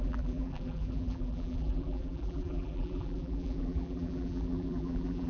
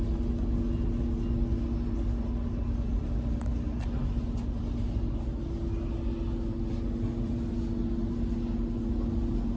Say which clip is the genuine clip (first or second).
second